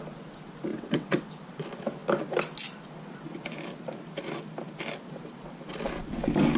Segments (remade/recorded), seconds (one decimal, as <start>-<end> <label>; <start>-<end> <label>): 0.0-0.7 recorded; 0.7-1.3 remade; 1.3-6.6 recorded